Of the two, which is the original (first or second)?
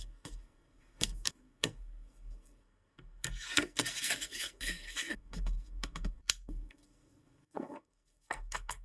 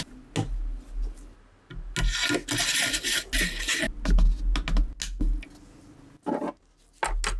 second